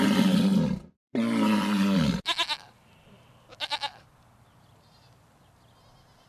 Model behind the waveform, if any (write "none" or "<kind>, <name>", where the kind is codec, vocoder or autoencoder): vocoder, BigVGAN v2